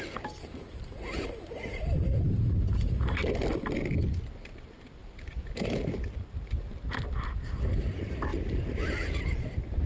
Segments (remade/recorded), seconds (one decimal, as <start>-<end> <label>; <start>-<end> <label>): 0.0-3.2 remade; 3.2-4.1 recorded; 4.1-8.3 remade; 8.3-9.2 recorded; 9.2-9.9 remade